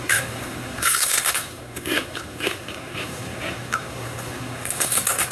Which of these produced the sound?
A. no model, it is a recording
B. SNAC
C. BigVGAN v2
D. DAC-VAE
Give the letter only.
B